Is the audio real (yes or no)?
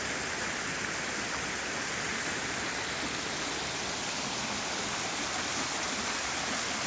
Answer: yes